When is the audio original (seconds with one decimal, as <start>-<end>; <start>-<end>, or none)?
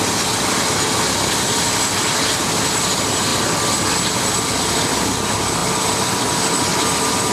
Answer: 0.0-3.3; 4.3-7.3